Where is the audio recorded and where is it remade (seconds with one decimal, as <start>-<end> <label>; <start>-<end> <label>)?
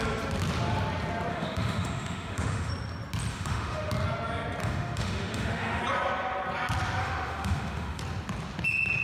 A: 0.0-1.3 recorded; 1.3-2.7 remade; 2.7-3.3 recorded; 3.3-3.9 remade; 3.9-4.6 recorded; 4.6-5.8 remade; 5.8-7.0 recorded; 7.0-8.0 remade; 8.0-9.0 recorded